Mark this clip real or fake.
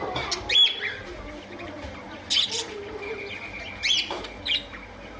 real